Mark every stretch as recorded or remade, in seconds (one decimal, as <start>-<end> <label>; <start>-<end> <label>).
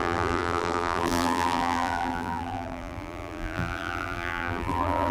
0.0-5.1 remade